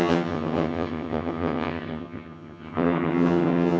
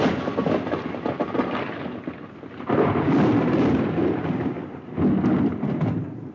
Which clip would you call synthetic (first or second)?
first